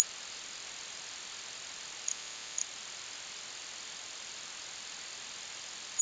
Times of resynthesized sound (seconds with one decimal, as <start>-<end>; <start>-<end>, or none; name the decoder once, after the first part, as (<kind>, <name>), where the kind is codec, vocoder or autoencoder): 2.1-2.6 (autoencoder, DAC-VAE)